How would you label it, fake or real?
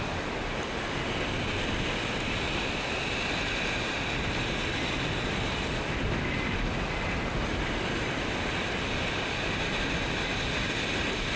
real